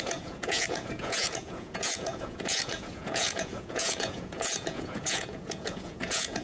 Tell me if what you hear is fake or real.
fake